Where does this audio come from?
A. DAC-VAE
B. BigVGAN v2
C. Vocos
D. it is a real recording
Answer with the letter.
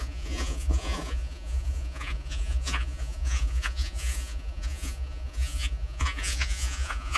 C